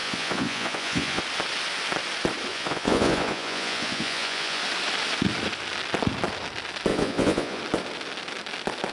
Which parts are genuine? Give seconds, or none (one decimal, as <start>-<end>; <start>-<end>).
1.2-2.5; 4.6-6.9; 7.6-8.9